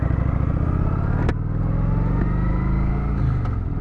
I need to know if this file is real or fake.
real